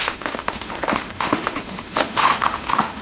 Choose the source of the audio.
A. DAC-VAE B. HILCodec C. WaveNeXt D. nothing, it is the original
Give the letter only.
A